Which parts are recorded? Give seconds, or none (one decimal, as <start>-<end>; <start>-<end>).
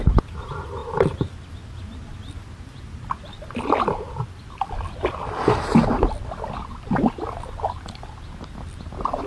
0.0-9.3